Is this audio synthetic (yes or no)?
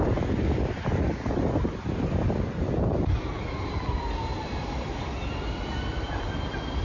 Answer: no